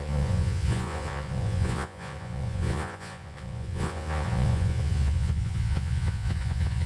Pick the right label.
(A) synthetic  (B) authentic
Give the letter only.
A